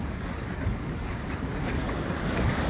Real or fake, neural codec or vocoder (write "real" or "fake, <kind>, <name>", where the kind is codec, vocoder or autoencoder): fake, codec, DAC